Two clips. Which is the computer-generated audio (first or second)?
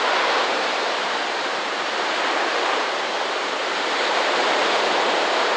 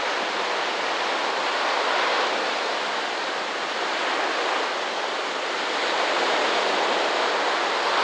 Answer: first